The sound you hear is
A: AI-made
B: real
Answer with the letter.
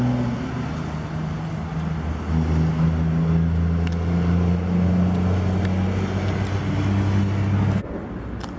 B